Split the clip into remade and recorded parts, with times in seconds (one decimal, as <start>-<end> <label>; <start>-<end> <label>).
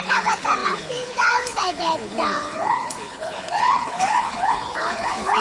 0.0-5.4 remade